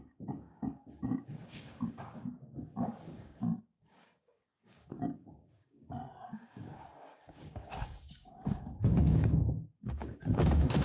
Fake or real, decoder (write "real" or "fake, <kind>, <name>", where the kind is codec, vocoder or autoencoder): fake, codec, DAC